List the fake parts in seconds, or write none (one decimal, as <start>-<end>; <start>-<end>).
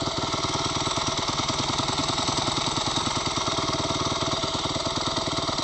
2.0-5.6